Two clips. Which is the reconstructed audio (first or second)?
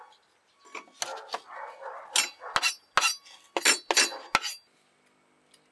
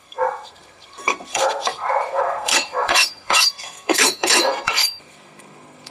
second